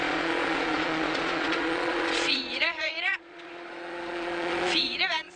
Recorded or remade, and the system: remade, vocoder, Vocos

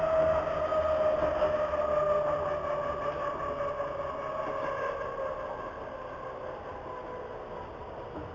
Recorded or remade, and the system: recorded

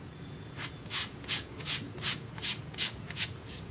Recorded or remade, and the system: remade, vocoder, Vocos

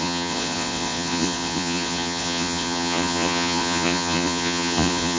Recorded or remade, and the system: remade, vocoder, Vocos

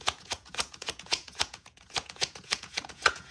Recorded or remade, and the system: remade, vocoder, Vocos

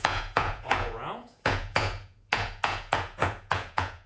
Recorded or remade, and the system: remade, vocoder, Vocos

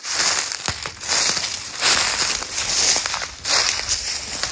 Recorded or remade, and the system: recorded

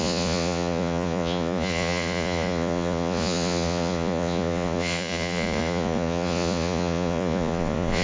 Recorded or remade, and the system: remade, vocoder, Vocos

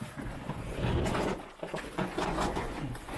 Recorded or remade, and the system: remade, vocoder, Vocos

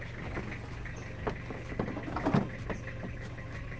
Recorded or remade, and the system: recorded